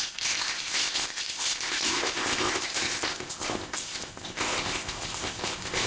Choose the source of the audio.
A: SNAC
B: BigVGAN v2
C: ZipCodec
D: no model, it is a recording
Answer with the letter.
C